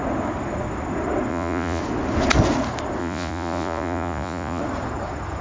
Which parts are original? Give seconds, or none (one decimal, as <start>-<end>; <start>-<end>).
0.0-1.3; 1.8-3.0; 4.6-5.4